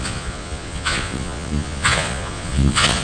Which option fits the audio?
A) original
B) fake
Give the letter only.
B